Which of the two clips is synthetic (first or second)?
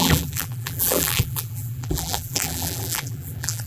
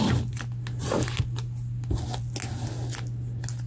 first